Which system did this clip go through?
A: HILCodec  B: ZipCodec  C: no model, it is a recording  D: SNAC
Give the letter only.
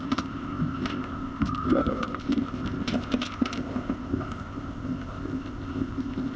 B